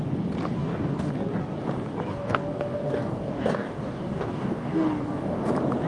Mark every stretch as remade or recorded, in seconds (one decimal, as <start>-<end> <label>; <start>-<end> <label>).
0.0-0.6 recorded; 0.6-1.1 remade; 1.1-2.1 recorded; 2.1-5.5 remade; 5.5-5.9 recorded